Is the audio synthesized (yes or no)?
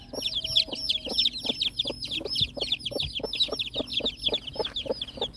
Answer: no